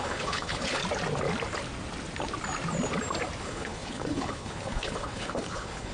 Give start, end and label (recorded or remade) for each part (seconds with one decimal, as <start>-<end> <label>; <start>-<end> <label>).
0.0-0.8 remade; 0.8-3.4 recorded; 3.4-5.9 remade